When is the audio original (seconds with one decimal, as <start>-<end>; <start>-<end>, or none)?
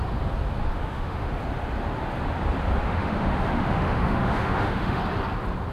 0.0-0.7; 1.3-2.8; 5.0-5.7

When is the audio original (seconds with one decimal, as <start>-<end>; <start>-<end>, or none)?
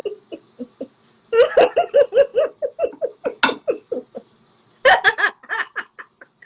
0.0-6.5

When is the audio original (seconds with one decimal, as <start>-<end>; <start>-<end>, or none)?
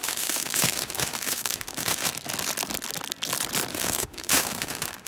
2.1-3.7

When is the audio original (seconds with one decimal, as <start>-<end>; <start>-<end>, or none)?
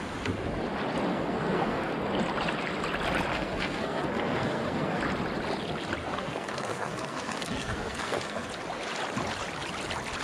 0.0-1.1; 1.9-3.3; 5.0-6.0; 8.5-10.2